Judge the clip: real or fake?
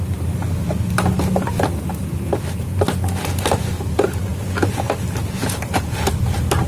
real